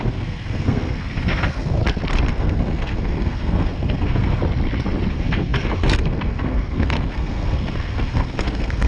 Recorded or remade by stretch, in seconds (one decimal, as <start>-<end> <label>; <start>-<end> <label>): 0.0-1.8 remade; 1.8-2.3 recorded; 2.3-4.4 remade; 4.4-5.1 recorded; 5.1-8.9 remade